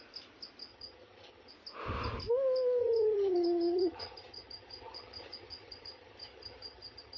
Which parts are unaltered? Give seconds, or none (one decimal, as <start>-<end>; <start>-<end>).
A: 0.0-0.7; 1.5-2.8